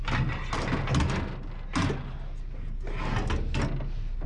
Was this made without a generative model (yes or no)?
yes